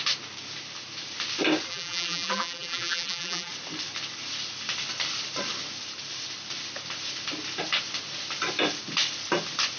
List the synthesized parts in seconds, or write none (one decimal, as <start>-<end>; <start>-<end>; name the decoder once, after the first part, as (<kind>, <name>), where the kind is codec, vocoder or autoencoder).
1.7-3.5 (vocoder, BigVGAN v2)